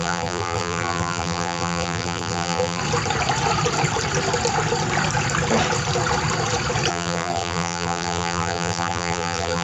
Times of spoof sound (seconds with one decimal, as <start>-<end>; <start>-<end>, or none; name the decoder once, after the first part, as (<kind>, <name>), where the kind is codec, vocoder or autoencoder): 0.0-2.8 (vocoder, BigVGAN v2); 6.9-9.6